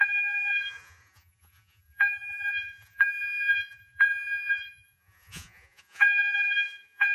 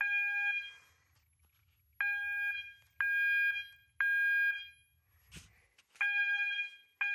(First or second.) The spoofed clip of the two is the first